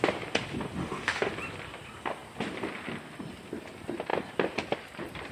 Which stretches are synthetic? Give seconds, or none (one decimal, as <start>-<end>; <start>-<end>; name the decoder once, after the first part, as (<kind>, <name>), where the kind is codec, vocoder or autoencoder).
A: 0.8-1.3 (autoencoder, DAC-VAE)